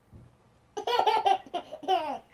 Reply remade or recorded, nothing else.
recorded